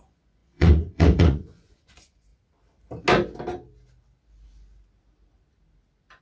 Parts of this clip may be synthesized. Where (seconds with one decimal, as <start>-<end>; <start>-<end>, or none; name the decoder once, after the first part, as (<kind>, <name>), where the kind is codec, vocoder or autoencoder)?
0.0-2.3 (vocoder, Vocos)